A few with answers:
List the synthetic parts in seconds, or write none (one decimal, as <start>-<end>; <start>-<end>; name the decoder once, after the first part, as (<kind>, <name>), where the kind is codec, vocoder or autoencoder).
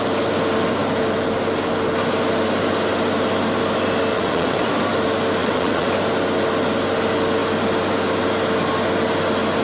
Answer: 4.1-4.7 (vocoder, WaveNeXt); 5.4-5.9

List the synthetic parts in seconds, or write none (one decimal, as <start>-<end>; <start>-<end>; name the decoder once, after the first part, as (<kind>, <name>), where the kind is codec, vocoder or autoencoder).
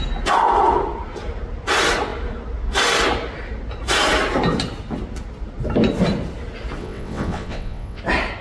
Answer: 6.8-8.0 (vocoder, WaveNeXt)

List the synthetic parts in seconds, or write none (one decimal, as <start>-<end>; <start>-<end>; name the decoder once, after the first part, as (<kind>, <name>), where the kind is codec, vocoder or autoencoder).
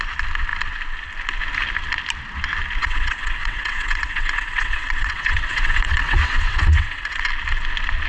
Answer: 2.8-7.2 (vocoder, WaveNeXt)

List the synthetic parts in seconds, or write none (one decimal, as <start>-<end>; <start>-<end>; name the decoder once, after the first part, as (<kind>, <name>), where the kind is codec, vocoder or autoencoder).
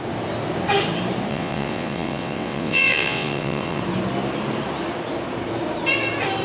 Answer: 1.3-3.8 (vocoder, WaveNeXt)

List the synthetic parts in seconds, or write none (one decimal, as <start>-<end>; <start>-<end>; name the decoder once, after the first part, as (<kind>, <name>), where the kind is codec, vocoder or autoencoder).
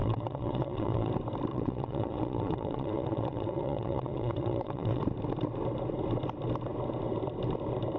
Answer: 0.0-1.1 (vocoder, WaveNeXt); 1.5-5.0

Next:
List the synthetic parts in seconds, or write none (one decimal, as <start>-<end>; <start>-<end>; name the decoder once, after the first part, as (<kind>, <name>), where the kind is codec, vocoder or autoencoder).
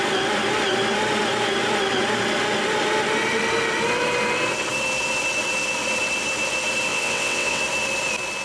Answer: 6.9-7.6 (vocoder, WaveNeXt)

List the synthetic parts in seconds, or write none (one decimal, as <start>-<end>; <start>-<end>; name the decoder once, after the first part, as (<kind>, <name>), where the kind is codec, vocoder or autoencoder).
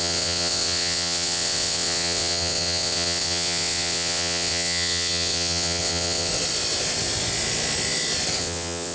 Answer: 0.0-6.3 (vocoder, WaveNeXt); 8.4-8.9